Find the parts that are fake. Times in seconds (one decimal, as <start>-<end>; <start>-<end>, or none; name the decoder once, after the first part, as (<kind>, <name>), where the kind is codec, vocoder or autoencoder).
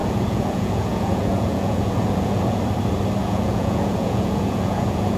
0.0-2.6 (vocoder, Vocos); 3.2-5.2